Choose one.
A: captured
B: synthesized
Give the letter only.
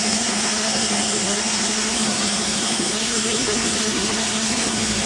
B